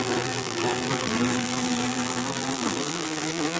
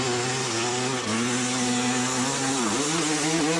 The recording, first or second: second